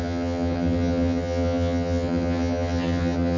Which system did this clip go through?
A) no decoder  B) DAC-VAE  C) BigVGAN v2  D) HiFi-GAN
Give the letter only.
D